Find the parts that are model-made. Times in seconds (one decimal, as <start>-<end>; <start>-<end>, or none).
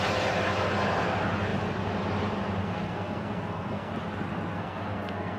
2.6-3.9; 4.5-5.4